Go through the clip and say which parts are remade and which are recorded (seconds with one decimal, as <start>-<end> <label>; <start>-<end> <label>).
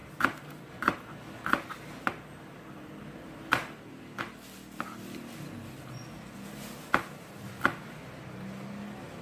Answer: 0.0-9.2 recorded